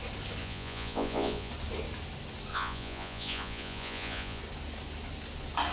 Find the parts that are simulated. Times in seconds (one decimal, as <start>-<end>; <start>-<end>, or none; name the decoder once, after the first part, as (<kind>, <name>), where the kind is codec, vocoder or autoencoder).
0.4-1.5 (vocoder, Vocos); 2.5-4.4